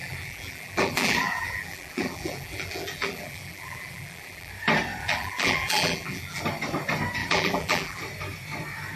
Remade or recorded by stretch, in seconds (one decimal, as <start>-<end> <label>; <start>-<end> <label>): 0.0-4.5 remade; 4.5-5.0 recorded; 5.0-6.4 remade; 6.4-7.2 recorded; 7.2-8.0 remade; 8.0-9.0 recorded